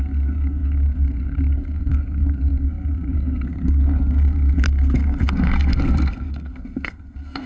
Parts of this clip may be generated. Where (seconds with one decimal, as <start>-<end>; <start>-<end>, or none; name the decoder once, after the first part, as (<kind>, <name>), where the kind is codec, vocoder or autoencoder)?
0.0-7.5 (codec, SNAC)